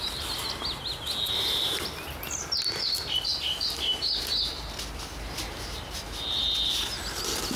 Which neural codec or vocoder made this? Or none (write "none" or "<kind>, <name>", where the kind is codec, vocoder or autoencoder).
none